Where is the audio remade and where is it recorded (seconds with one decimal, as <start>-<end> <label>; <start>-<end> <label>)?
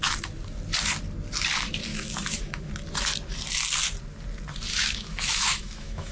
0.0-1.9 recorded; 1.9-2.7 remade; 2.7-4.7 recorded; 4.7-6.1 remade